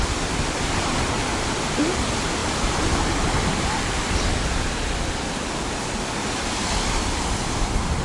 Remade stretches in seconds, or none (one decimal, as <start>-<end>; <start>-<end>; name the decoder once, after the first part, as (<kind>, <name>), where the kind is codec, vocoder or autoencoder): 0.0-8.0 (vocoder, BigVGAN v2)